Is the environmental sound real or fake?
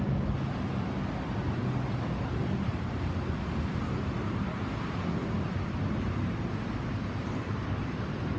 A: real